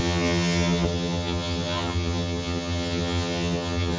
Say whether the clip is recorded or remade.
remade